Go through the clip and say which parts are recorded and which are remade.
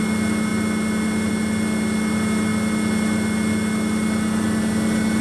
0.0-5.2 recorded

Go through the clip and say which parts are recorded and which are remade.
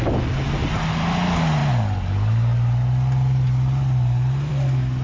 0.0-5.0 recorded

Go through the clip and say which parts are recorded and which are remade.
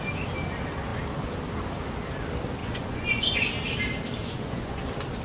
0.0-2.6 recorded; 2.6-3.5 remade; 3.5-4.2 recorded; 4.2-4.8 remade; 4.8-5.2 recorded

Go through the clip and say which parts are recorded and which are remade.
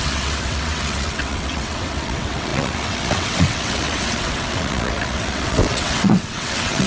0.0-6.9 remade